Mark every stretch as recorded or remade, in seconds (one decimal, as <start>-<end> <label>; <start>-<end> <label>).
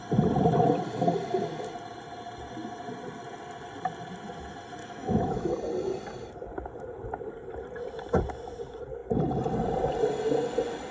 0.0-4.8 recorded; 4.8-5.5 remade; 5.5-10.9 recorded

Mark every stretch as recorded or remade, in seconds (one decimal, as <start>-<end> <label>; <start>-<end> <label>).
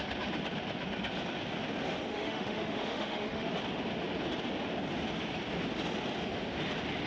0.0-2.1 recorded; 2.1-3.5 remade; 3.5-7.1 recorded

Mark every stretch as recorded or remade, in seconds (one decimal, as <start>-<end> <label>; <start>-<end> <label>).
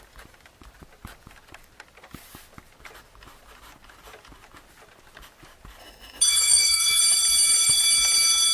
0.0-5.8 recorded; 5.8-7.0 remade; 7.0-8.5 recorded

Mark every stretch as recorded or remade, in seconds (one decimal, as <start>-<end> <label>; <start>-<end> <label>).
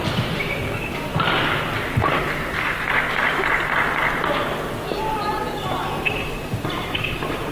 0.0-7.5 recorded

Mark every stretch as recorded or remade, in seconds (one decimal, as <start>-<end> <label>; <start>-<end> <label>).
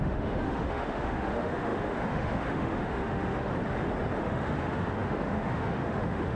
0.0-3.5 remade; 3.5-4.2 recorded; 4.2-6.4 remade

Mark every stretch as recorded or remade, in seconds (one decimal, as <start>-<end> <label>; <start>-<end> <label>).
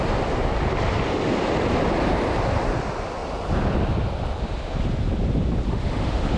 0.0-5.7 recorded; 5.7-6.4 remade